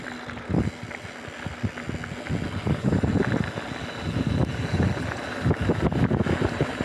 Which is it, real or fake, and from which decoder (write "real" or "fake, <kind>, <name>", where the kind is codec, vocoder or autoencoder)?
real